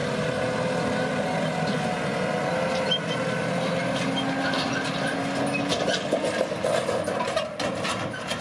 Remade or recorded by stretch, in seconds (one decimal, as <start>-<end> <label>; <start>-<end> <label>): 0.0-8.4 recorded